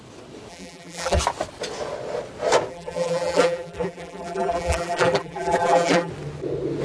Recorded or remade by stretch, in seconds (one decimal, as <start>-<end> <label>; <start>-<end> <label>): 0.0-0.5 recorded; 0.5-1.2 remade; 1.2-2.7 recorded; 2.7-6.1 remade; 6.1-6.8 recorded